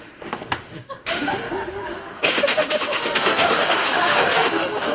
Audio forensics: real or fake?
fake